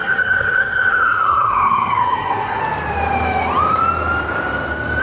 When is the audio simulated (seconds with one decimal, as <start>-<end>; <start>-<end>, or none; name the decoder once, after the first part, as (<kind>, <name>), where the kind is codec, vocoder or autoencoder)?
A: 0.0-2.6 (codec, SNAC)